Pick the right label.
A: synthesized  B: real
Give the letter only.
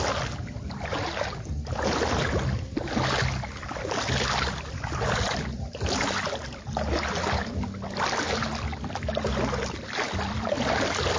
B